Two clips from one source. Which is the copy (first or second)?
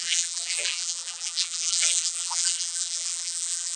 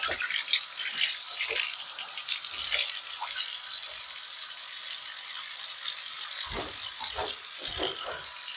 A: first